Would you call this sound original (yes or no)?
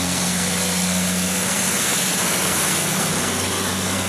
no